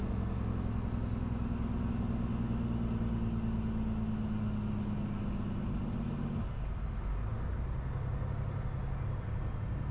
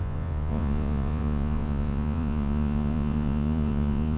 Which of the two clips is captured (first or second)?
first